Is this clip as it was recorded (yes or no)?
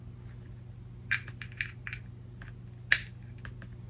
yes